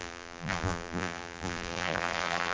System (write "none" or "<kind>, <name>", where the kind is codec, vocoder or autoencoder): vocoder, BigVGAN v2